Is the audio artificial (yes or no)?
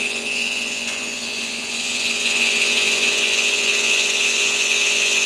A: yes